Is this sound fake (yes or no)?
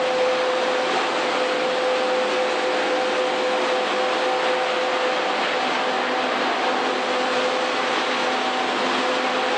no